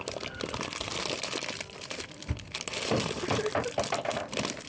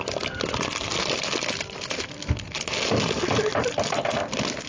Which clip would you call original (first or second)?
second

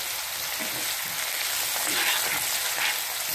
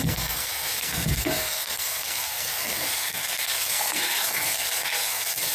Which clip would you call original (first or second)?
first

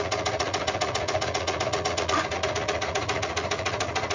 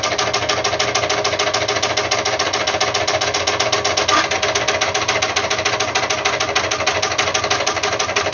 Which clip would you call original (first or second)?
second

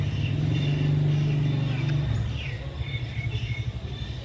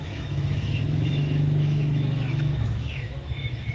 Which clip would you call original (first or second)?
first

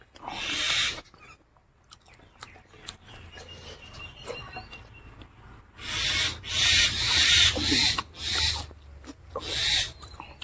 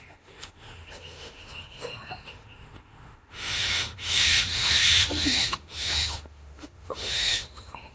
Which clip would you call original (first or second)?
first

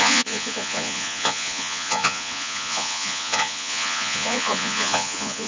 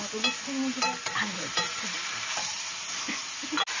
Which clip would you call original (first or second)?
second